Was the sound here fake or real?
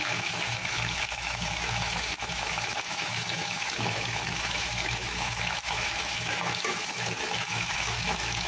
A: fake